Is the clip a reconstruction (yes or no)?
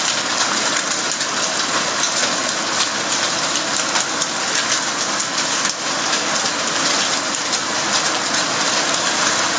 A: no